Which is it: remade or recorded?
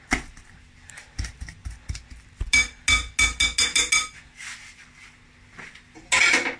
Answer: recorded